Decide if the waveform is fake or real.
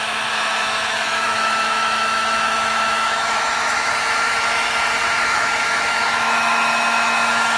fake